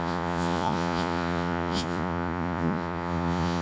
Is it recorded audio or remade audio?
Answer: remade